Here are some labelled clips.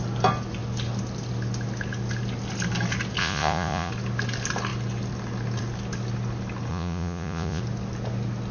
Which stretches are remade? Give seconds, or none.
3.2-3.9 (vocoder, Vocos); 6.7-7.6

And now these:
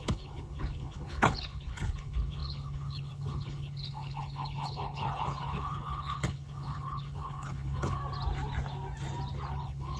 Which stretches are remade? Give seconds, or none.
0.0-8.0 (codec, HILCodec); 9.5-10.0